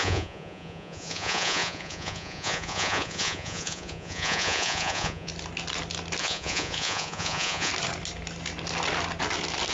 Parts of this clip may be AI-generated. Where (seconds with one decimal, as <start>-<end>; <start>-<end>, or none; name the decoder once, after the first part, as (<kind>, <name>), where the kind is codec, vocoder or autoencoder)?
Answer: 0.0-5.3 (vocoder, Vocos); 6.2-7.7